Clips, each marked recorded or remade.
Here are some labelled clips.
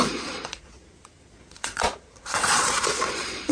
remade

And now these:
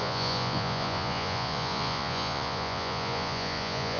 remade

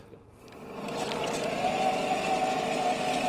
recorded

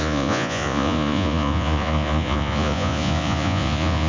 remade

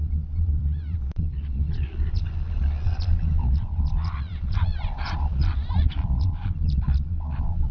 remade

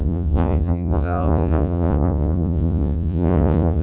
remade